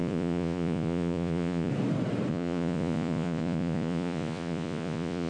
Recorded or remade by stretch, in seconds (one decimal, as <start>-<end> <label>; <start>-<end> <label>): 0.0-1.7 remade; 1.7-2.3 recorded; 2.3-5.3 remade